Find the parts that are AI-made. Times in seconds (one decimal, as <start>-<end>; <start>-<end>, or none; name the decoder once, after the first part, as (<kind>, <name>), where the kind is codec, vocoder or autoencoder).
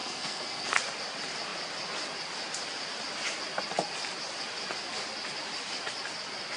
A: 0.0-0.7 (codec, SNAC)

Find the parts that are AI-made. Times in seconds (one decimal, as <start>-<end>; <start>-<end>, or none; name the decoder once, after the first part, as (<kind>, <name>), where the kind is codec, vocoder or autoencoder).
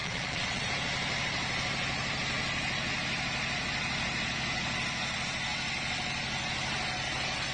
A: 0.0-0.7 (vocoder, Vocos)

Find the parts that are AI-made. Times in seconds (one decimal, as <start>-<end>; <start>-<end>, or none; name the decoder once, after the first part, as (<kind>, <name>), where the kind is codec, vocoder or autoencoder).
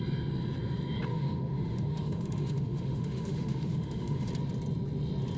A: 1.1-4.3 (autoencoder, DAC-VAE)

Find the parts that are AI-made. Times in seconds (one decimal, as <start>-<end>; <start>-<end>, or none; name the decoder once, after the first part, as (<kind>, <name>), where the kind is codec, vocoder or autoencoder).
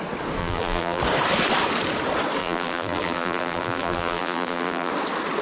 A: 0.4-1.0 (vocoder, BigVGAN v2); 2.4-4.9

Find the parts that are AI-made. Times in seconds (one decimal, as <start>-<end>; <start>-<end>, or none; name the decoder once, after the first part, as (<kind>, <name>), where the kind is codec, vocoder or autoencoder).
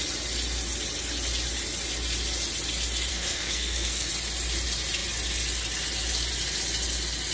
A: 3.1-4.1 (codec, SNAC)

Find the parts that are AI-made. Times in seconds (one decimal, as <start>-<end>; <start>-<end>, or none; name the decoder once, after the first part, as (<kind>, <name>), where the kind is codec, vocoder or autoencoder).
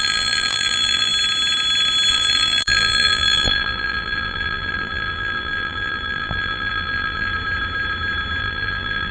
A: 0.0-1.1 (vocoder, BigVGAN v2); 2.1-7.3; 8.4-9.1